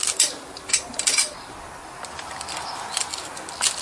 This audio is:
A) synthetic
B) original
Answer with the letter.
B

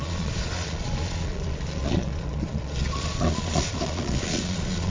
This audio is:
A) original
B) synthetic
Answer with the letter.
B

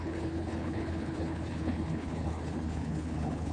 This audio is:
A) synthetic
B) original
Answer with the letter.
A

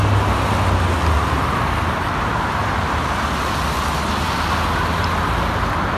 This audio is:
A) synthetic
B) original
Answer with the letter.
B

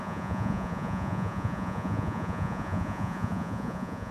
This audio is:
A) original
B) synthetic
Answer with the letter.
B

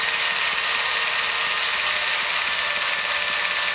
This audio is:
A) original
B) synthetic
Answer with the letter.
A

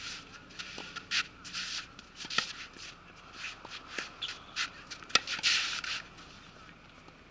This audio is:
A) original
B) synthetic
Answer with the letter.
A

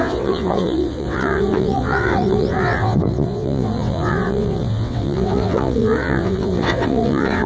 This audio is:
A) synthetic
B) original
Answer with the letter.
A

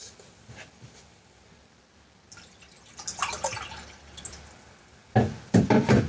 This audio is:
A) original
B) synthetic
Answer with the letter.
A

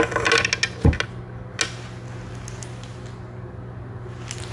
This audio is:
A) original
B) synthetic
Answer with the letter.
A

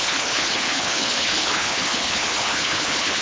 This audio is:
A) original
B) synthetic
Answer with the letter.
B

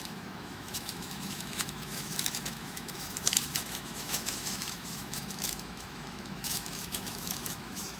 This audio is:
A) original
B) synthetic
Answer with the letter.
B